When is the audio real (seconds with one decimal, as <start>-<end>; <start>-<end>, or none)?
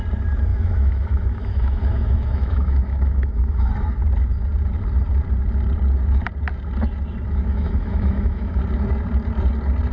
0.0-0.5; 3.7-7.5; 8.6-9.9